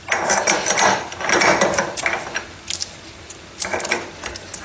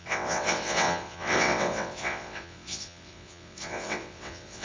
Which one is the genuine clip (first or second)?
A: first